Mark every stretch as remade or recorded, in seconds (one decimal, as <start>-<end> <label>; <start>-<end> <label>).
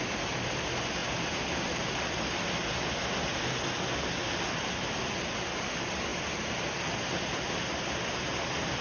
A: 0.0-1.0 recorded; 1.0-1.9 remade; 1.9-8.8 recorded